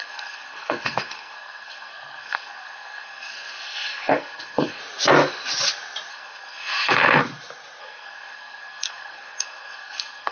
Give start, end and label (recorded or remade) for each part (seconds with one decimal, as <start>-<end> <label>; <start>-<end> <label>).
0.0-4.8 remade; 4.8-6.1 recorded; 6.1-7.2 remade; 7.2-7.8 recorded; 7.8-10.3 remade